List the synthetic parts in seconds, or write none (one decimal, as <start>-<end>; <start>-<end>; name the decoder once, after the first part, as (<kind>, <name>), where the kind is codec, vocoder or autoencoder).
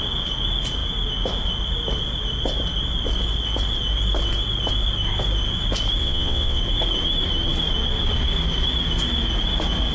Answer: 6.0-6.6 (vocoder, WaveNeXt)